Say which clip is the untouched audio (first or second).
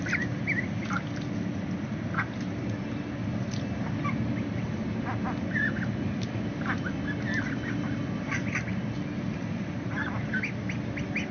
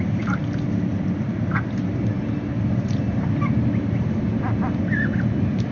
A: first